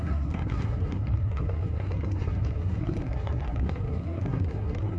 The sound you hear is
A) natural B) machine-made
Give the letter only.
B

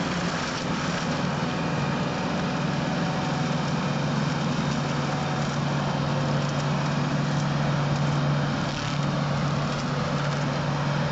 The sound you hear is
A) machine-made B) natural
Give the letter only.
B